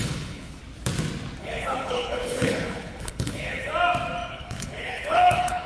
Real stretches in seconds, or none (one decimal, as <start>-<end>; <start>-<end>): 0.6-1.4; 3.7-4.3